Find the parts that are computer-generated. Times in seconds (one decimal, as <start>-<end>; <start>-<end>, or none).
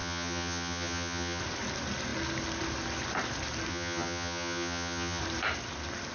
0.0-1.4; 3.7-5.2